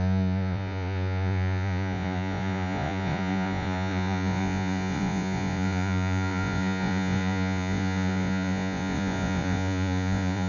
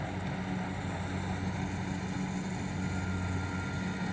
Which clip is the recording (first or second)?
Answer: second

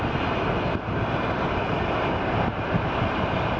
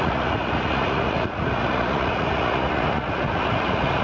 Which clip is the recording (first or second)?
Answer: first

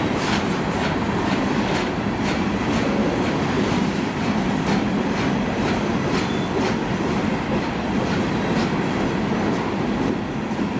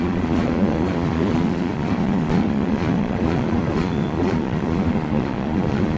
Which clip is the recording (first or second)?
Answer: first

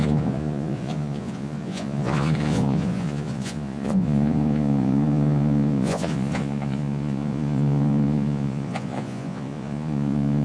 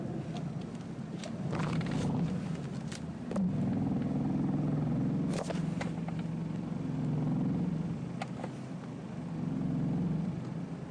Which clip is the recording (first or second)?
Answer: second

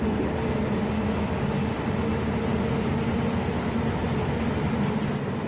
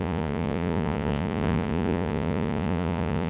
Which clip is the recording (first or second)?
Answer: first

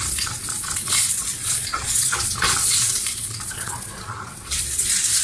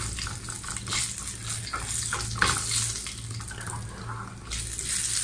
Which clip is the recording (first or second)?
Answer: second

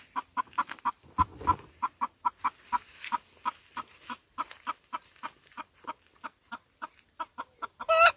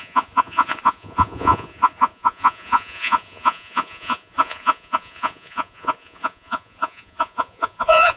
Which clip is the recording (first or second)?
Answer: first